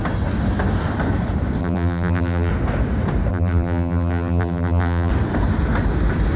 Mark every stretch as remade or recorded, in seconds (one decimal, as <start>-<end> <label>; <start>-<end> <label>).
0.0-1.6 recorded; 1.6-2.5 remade; 2.5-3.3 recorded; 3.3-5.1 remade; 5.1-6.4 recorded